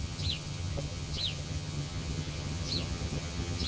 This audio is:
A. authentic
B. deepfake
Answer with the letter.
B